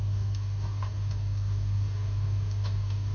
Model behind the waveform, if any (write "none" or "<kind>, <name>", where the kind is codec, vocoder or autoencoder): codec, DAC